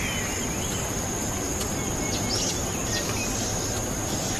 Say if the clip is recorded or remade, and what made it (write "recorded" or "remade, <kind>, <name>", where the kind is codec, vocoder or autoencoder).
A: recorded